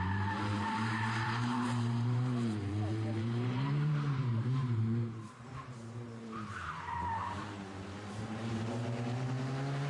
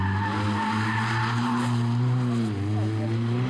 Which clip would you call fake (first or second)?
first